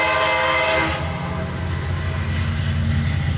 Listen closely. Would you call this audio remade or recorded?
recorded